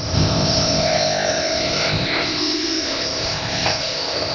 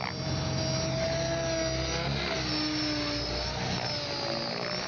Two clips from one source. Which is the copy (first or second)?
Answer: first